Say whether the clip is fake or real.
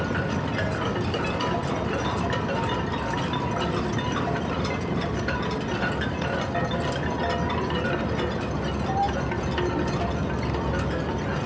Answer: real